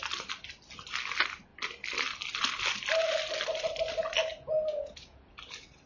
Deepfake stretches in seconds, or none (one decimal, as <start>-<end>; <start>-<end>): 4.3-5.3